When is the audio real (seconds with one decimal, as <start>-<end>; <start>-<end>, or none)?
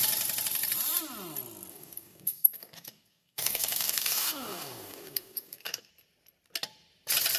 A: 0.0-1.7; 5.9-7.4